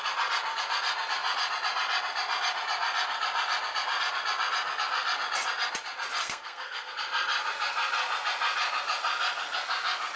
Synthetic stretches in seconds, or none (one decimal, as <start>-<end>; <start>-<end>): 6.2-6.9